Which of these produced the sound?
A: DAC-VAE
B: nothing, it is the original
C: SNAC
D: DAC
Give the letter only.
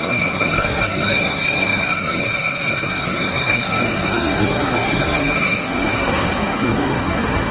C